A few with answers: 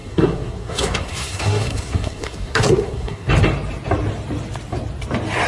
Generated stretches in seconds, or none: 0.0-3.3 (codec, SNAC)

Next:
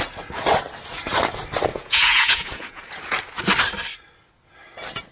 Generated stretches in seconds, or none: 1.7-2.8 (vocoder, Vocos)